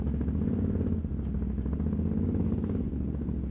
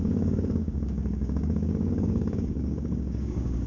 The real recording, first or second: first